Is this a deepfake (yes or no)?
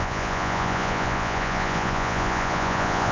yes